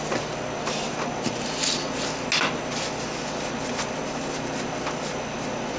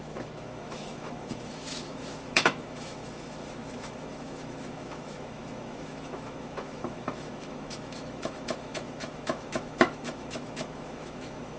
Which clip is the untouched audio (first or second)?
first